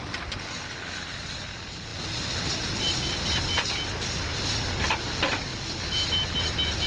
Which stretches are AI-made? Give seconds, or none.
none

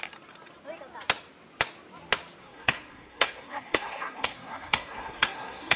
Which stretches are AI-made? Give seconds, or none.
2.4-5.8 (codec, SNAC)

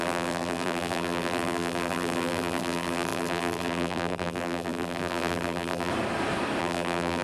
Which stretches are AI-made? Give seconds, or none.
0.0-5.9 (vocoder, BigVGAN v2); 6.6-7.2

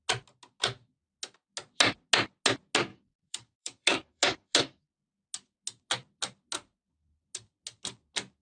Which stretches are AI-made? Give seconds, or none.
2.9-4.9 (codec, DAC)

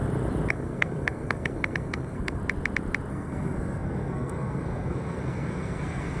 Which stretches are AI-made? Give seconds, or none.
0.5-2.4 (codec, SNAC); 3.1-6.2